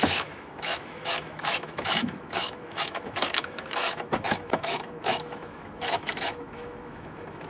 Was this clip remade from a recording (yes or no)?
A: yes